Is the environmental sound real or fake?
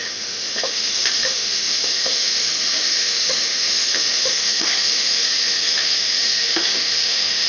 fake